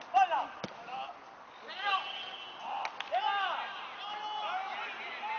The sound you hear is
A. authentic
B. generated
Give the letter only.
A